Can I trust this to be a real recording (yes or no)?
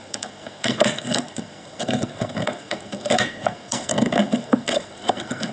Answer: no